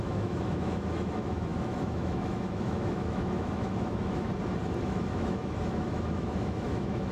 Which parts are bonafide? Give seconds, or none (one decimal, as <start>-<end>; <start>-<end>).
4.3-4.8